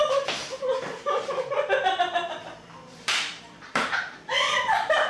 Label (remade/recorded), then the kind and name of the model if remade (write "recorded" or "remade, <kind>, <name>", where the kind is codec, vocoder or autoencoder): remade, vocoder, BigVGAN v2